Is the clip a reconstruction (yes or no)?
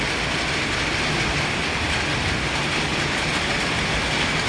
no